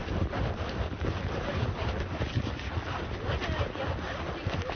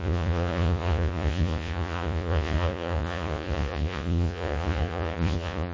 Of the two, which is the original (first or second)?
first